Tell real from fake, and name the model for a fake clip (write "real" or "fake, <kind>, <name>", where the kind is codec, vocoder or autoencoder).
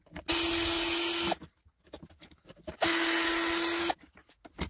real